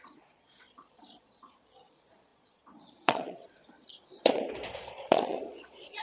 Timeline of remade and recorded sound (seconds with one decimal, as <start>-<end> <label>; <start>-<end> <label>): 0.0-6.0 remade